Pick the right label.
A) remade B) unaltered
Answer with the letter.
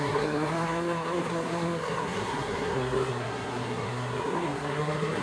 A